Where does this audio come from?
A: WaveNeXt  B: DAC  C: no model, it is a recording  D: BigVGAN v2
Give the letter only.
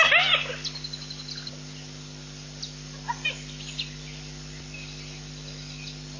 C